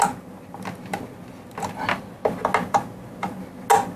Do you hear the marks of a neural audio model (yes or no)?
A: no